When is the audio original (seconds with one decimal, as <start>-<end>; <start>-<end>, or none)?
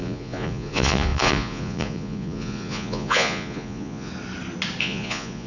4.1-4.8